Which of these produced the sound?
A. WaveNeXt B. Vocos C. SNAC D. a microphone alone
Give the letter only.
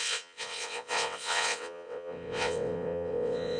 A